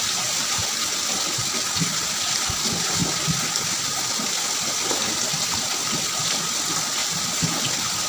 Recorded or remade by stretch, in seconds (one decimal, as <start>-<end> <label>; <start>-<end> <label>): 0.0-7.0 recorded; 7.0-7.6 remade; 7.6-8.1 recorded